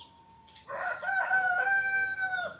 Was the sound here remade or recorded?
remade